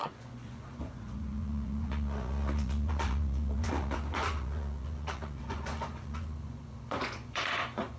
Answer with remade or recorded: remade